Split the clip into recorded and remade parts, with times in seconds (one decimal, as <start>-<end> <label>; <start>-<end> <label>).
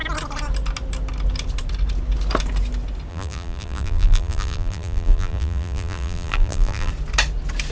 0.0-3.1 recorded; 3.1-6.9 remade; 6.9-7.7 recorded